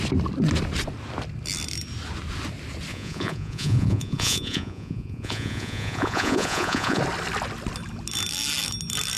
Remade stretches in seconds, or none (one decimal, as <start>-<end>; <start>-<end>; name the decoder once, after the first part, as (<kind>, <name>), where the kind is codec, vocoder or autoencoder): 2.9-7.0 (vocoder, Vocos)